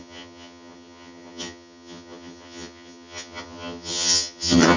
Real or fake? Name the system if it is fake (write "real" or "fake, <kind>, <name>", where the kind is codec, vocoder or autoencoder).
fake, vocoder, HiFi-GAN